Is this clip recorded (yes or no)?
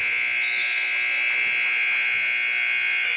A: yes